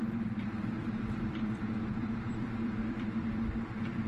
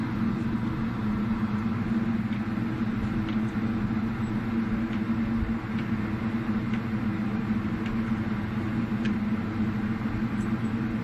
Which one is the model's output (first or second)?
first